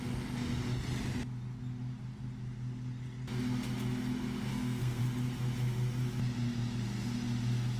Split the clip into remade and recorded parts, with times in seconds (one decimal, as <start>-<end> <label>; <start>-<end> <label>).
0.0-4.5 recorded; 4.5-5.0 remade; 5.0-7.8 recorded